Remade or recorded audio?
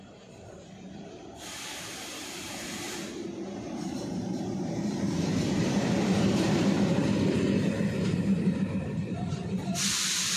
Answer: remade